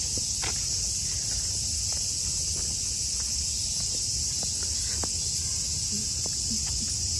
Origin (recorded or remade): recorded